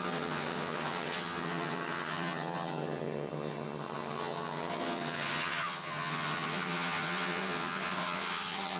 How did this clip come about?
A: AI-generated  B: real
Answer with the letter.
A